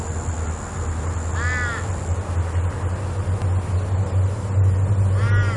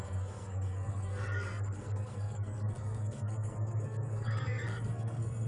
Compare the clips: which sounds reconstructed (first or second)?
second